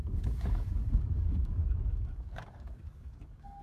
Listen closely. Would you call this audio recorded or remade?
remade